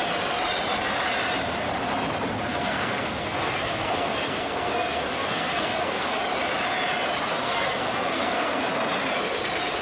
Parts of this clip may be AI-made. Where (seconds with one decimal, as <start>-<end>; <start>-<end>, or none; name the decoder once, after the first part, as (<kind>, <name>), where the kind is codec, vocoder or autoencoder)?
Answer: 2.3-6.2 (codec, SNAC); 7.3-8.7